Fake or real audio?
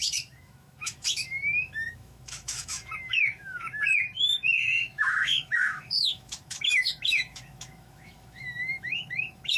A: fake